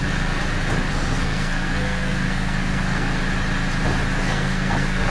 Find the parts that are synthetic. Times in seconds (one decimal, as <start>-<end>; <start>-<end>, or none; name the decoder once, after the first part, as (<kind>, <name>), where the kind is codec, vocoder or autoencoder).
0.0-0.4 (codec, SNAC); 0.9-3.2; 4.2-5.1